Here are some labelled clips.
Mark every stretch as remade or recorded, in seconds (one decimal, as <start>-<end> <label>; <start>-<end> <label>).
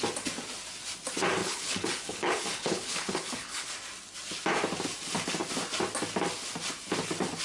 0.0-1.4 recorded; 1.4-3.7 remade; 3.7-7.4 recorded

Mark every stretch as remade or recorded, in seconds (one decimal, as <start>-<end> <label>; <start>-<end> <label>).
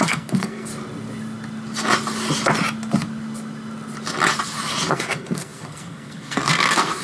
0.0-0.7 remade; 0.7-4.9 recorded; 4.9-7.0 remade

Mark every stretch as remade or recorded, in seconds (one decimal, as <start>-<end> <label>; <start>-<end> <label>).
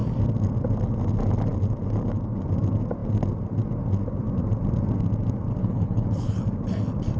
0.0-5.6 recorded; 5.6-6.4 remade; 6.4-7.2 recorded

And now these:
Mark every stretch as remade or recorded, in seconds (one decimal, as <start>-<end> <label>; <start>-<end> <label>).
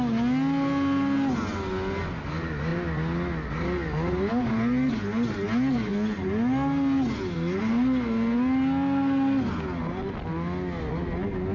0.0-11.5 recorded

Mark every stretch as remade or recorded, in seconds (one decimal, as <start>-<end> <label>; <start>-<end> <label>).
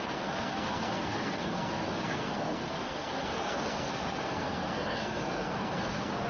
0.0-6.3 remade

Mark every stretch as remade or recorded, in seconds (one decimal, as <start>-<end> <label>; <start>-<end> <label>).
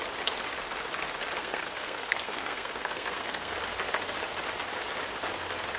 0.0-1.4 recorded; 1.4-3.5 remade; 3.5-5.8 recorded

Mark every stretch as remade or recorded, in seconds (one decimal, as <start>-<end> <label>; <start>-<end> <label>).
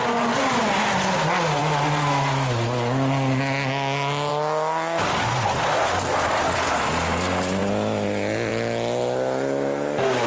0.0-10.3 recorded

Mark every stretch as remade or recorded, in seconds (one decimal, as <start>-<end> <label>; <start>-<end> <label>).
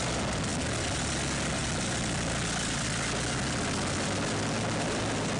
0.0-5.4 recorded